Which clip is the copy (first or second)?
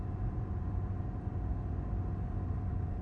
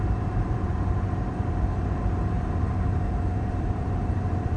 second